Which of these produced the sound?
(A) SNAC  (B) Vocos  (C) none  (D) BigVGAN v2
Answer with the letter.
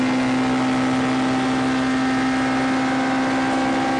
C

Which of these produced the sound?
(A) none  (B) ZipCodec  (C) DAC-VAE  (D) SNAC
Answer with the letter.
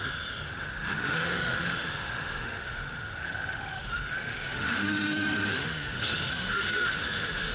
C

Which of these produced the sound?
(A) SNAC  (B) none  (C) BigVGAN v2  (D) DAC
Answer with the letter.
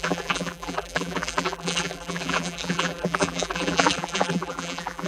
C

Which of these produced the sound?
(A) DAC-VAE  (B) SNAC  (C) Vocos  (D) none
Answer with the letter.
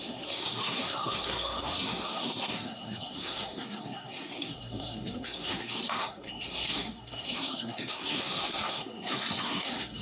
B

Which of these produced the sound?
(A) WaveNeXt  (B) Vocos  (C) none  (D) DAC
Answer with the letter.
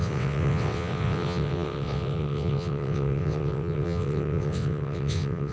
A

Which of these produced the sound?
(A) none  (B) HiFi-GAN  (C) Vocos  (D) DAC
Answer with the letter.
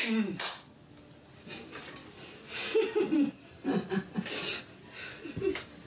A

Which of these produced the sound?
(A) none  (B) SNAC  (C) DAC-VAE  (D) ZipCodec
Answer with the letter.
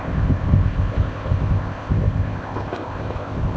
D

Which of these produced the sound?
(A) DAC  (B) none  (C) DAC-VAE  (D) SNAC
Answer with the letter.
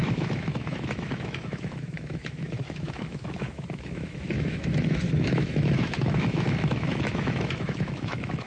C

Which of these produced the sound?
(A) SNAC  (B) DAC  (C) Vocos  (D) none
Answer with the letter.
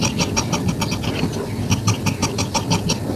D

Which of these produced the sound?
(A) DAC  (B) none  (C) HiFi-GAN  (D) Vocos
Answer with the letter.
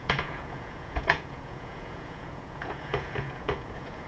D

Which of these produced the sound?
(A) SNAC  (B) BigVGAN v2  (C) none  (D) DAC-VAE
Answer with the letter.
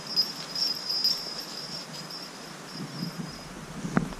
C